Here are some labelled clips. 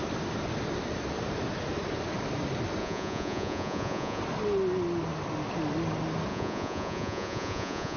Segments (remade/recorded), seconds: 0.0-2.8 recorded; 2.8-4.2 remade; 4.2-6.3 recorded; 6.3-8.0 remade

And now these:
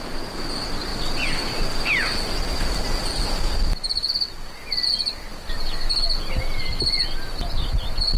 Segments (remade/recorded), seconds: 0.0-8.2 recorded

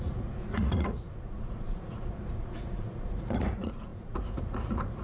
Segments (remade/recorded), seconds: 0.0-5.0 remade

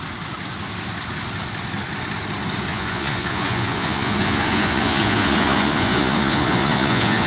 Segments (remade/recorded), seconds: 0.0-2.7 recorded; 2.7-7.3 remade

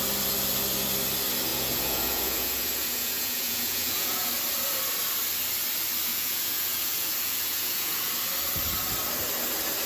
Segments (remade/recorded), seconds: 0.0-1.5 recorded; 1.5-4.3 remade; 4.3-6.1 recorded; 6.1-8.1 remade; 8.1-9.9 recorded

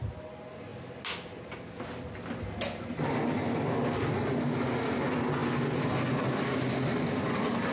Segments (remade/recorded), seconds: 0.0-7.7 recorded

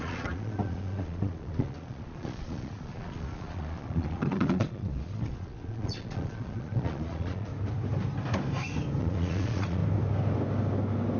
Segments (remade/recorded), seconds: 0.0-7.5 remade; 7.5-9.0 recorded; 9.0-9.8 remade; 9.8-11.2 recorded

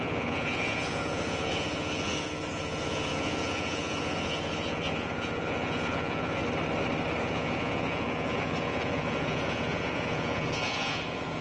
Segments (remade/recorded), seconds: 0.0-6.4 remade; 6.4-7.2 recorded; 7.2-11.4 remade